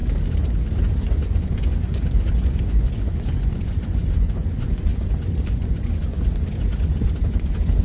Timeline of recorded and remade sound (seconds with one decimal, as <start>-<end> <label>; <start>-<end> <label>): 0.0-1.0 recorded; 1.0-7.8 remade